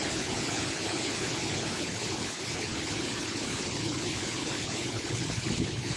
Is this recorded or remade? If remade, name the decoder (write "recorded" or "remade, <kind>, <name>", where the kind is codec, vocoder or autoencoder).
remade, codec, HILCodec